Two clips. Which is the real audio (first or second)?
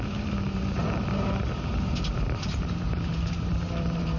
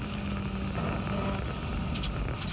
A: second